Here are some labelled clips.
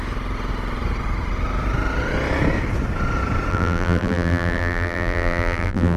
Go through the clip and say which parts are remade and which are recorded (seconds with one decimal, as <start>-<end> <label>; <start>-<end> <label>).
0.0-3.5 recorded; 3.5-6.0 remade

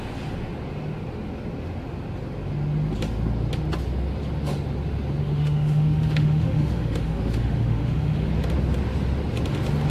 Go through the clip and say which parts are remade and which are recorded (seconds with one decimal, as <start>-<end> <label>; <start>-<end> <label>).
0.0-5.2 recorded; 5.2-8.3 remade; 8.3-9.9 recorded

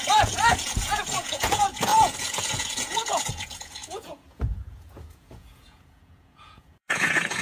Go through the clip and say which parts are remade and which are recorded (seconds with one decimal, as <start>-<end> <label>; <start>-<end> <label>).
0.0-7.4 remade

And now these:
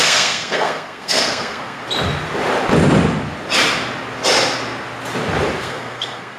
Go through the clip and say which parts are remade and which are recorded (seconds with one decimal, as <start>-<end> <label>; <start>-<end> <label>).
0.0-1.8 remade; 1.8-5.6 recorded; 5.6-6.4 remade

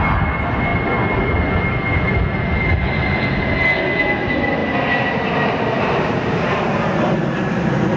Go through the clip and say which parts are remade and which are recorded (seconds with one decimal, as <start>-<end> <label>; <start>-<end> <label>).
0.0-4.6 recorded; 4.6-6.5 remade; 6.5-8.0 recorded

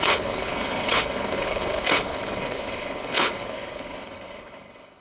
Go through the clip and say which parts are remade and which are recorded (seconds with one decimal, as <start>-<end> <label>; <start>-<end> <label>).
0.0-5.0 remade

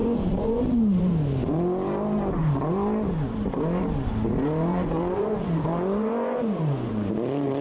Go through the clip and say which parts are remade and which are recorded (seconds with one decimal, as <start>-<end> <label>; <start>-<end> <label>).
0.0-1.0 remade; 1.0-4.7 recorded; 4.7-7.1 remade; 7.1-7.6 recorded